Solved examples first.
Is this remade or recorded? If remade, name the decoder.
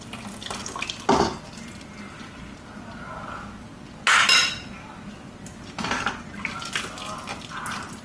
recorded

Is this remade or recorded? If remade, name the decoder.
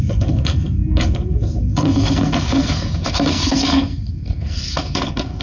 remade, codec, SNAC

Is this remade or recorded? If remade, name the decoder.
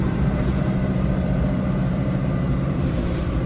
remade, vocoder, BigVGAN v2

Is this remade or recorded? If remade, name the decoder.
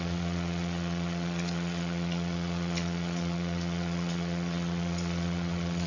remade, vocoder, WaveNeXt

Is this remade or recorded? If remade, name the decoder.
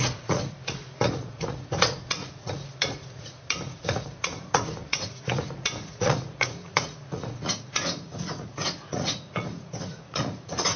remade, vocoder, Vocos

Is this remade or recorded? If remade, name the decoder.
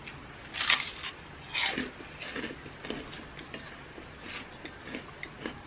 recorded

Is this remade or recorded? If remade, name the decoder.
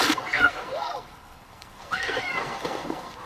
remade, codec, SNAC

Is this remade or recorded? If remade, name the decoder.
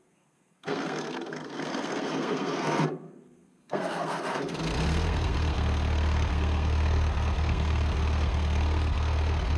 remade, codec, SNAC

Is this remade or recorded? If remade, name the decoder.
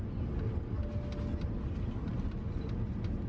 recorded